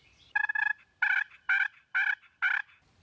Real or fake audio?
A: real